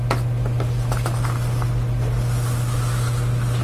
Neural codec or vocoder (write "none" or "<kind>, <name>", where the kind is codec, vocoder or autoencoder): none